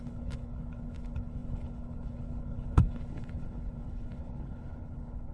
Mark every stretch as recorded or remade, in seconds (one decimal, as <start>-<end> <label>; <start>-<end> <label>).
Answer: 0.0-5.3 remade